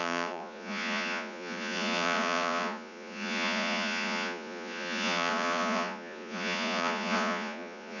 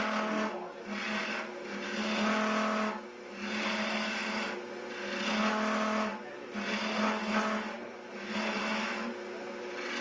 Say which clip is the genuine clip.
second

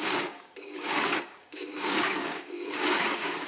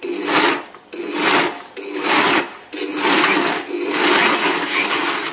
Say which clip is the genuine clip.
second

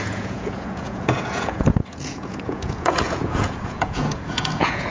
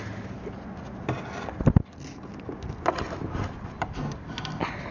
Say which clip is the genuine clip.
second